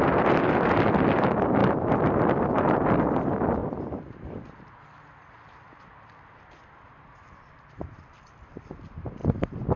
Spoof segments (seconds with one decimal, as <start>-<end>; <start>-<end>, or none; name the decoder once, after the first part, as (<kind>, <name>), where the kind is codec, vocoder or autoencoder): 3.6-4.9 (vocoder, BigVGAN v2); 9.2-9.8